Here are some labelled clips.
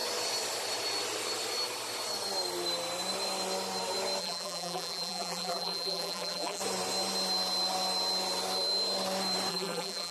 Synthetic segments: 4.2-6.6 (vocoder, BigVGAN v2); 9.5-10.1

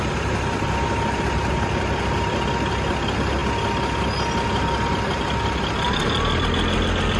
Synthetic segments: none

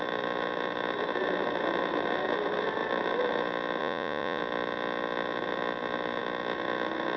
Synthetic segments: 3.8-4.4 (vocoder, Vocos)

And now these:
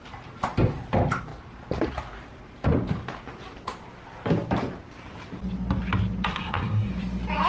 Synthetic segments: 6.3-6.9 (codec, SNAC)